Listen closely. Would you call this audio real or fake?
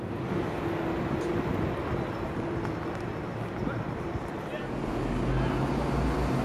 real